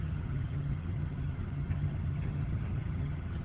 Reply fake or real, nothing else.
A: fake